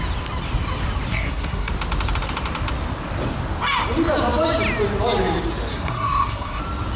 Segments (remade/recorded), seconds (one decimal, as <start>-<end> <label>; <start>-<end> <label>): 0.0-1.1 recorded; 1.1-1.7 remade; 1.7-5.7 recorded; 5.7-6.6 remade; 6.6-7.0 recorded

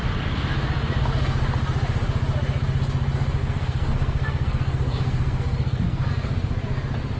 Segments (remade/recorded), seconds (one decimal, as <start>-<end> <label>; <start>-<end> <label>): 0.0-3.4 recorded; 3.4-6.1 remade; 6.1-7.2 recorded

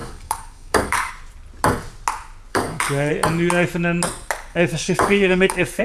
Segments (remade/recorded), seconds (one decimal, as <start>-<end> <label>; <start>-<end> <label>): 0.0-1.1 remade; 1.1-2.5 recorded; 2.5-3.1 remade; 3.1-4.5 recorded; 4.5-5.8 remade

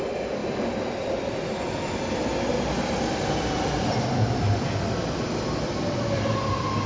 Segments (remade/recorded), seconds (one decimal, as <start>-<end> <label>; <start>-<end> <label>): 0.0-6.9 recorded

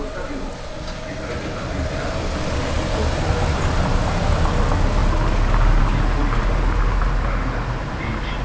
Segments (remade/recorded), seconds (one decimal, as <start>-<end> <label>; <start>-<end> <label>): 0.0-8.4 recorded

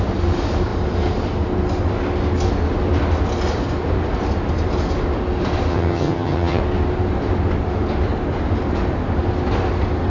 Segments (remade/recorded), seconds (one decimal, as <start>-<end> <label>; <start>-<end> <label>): 0.0-5.7 recorded; 5.7-6.6 remade; 6.6-10.1 recorded